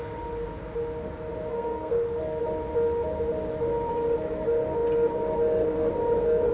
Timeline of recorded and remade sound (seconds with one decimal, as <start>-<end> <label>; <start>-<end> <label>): 0.0-1.5 recorded; 1.5-2.4 remade; 2.4-6.5 recorded